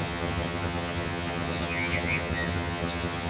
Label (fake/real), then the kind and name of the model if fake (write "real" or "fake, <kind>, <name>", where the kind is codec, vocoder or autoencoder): fake, vocoder, HiFi-GAN